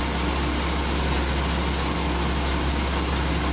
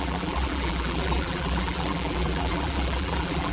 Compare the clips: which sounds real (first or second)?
first